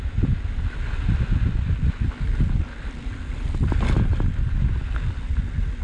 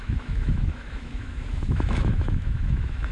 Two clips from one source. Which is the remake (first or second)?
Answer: second